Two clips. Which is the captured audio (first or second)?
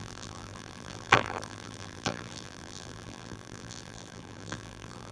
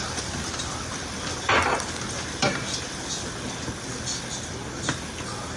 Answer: second